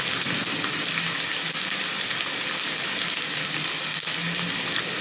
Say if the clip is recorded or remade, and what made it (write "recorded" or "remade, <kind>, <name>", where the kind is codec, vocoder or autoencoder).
recorded